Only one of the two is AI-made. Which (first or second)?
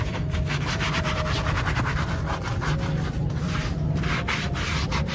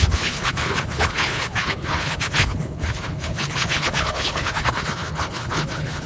second